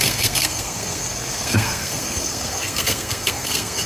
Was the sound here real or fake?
fake